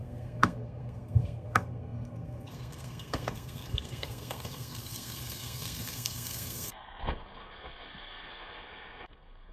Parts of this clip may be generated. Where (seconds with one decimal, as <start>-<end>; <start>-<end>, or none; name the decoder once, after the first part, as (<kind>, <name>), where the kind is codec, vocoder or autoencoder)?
0.0-9.5 (codec, SNAC)

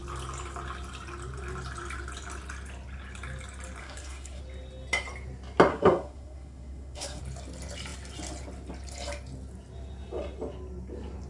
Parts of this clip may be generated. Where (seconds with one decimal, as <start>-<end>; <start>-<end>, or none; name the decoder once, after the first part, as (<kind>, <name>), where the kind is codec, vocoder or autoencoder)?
3.8-4.4 (codec, SNAC); 5.7-7.2

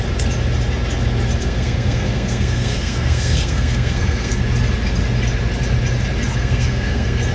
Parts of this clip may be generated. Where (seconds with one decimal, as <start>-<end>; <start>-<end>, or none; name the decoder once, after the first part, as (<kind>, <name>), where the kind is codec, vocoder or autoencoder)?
1.4-4.4 (codec, SNAC); 6.3-7.3

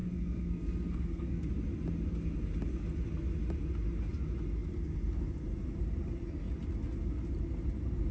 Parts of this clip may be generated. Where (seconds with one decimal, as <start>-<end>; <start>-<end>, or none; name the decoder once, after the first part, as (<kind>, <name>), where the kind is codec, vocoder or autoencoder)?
0.0-1.5 (codec, SNAC)

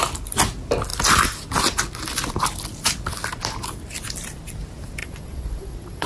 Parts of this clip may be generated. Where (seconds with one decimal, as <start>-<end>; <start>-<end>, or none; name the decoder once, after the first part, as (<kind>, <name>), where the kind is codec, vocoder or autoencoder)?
5.0-6.1 (vocoder, Vocos)

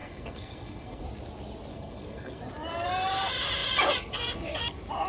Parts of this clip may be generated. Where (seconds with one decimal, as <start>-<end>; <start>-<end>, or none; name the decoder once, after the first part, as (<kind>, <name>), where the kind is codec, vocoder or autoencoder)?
0.0-1.0 (codec, SNAC); 1.7-2.4

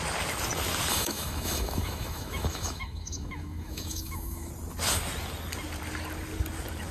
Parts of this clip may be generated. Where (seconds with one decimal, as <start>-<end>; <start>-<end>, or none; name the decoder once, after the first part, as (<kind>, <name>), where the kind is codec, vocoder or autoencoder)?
0.9-4.5 (autoencoder, DAC-VAE)